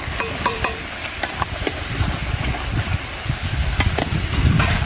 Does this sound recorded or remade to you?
remade